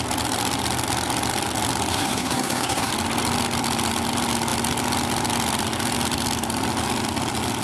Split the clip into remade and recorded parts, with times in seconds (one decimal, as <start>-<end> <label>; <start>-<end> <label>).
0.0-1.9 recorded; 1.9-2.9 remade; 2.9-7.6 recorded